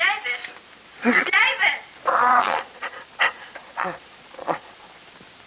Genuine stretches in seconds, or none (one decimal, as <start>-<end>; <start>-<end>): 0.0-0.9; 1.4-2.2; 2.9-3.6; 5.1-5.5